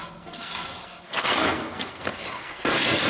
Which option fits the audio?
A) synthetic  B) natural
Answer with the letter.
A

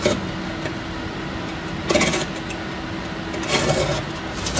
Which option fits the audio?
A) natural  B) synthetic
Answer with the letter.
A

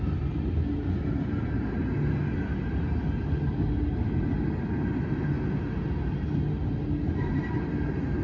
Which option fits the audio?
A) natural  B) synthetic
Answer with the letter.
A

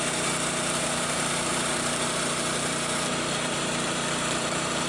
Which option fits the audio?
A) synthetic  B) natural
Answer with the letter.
A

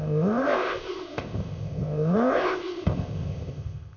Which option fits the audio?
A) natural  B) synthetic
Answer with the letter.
B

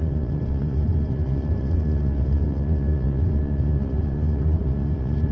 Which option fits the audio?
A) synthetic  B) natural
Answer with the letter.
A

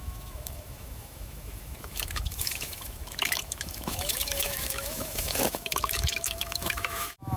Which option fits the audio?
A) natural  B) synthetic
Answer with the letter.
B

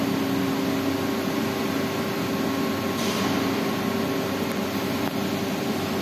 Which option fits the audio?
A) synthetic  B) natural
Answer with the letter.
B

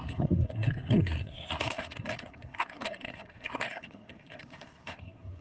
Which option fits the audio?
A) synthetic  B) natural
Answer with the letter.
A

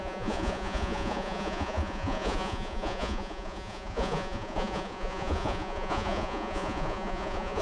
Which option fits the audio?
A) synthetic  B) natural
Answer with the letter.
A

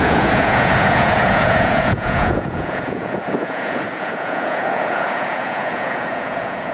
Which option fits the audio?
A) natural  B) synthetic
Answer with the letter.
B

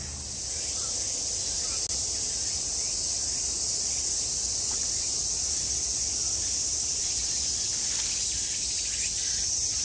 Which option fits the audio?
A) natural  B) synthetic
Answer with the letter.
A